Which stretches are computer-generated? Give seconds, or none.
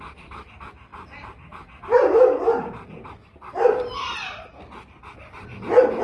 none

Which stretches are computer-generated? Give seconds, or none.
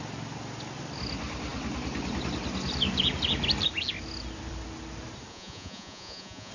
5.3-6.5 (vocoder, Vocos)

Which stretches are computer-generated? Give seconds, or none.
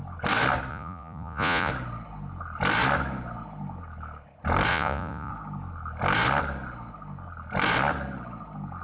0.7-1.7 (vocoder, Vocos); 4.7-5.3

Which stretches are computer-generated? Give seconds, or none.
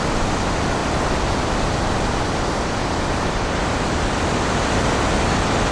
none